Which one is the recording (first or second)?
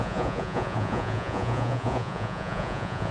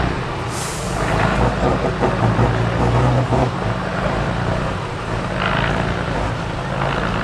second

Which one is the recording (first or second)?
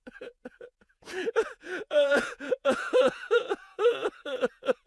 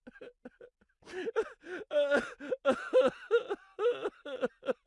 second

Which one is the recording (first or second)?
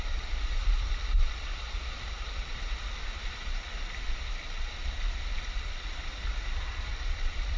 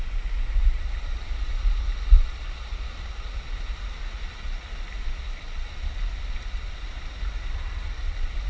second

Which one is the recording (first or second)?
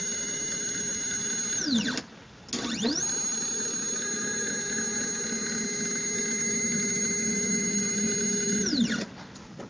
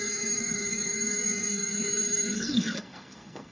first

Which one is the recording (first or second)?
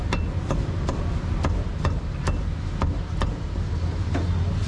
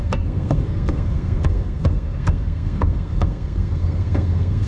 first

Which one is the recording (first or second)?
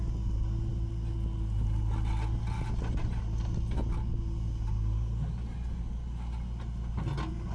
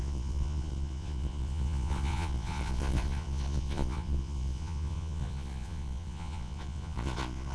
first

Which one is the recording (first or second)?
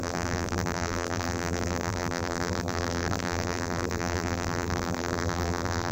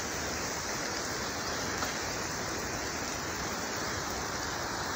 second